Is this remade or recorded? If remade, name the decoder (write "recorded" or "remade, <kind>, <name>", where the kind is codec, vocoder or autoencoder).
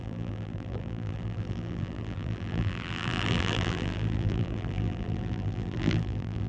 remade, vocoder, BigVGAN v2